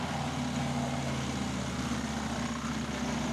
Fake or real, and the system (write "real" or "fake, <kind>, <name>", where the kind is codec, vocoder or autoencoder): real